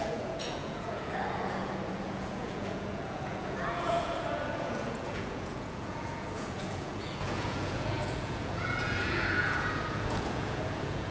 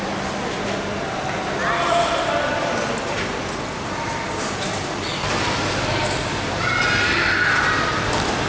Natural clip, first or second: second